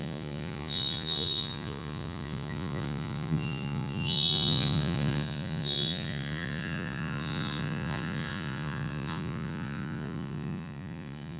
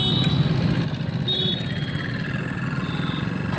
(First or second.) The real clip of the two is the second